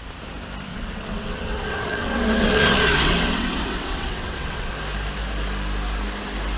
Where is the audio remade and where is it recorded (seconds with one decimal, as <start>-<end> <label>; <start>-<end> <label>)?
0.0-0.7 recorded; 0.7-4.7 remade; 4.7-6.6 recorded